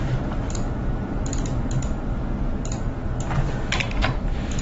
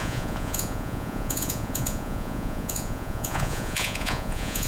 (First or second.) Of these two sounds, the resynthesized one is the second